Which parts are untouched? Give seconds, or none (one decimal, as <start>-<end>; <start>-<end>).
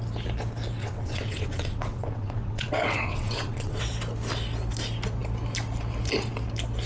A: 0.0-0.8; 3.8-6.9